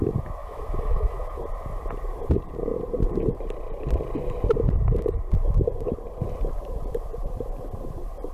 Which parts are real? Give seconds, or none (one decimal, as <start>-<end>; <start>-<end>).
0.0-0.4; 1.4-8.3